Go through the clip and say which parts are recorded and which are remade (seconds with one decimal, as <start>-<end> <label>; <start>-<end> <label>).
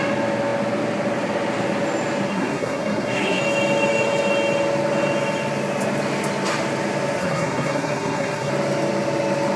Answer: 0.0-2.3 recorded; 2.3-3.4 remade; 3.4-7.2 recorded; 7.2-8.5 remade; 8.5-9.6 recorded